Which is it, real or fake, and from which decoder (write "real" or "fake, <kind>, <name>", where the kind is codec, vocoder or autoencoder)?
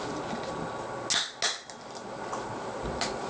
real